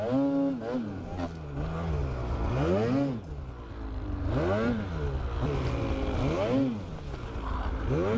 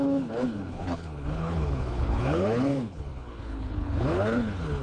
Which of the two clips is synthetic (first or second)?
second